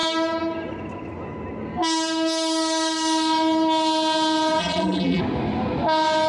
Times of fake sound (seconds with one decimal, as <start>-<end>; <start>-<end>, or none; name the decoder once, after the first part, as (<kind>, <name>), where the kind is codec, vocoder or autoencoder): 4.6-5.2 (vocoder, BigVGAN v2)